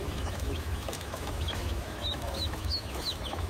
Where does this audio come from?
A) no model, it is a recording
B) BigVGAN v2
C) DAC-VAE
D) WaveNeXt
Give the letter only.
C